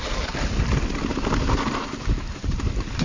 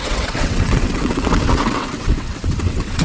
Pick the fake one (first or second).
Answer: second